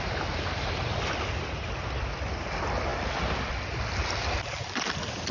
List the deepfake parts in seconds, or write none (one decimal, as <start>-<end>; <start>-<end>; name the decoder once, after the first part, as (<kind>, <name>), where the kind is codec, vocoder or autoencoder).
none